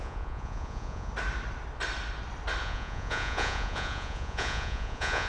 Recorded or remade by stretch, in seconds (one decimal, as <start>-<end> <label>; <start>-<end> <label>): 0.0-1.1 remade; 1.1-2.6 recorded; 2.6-5.3 remade